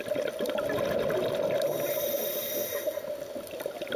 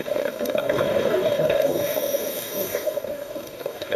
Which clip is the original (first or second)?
first